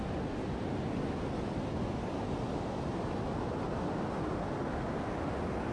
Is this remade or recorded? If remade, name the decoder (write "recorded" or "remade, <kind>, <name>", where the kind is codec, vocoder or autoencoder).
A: recorded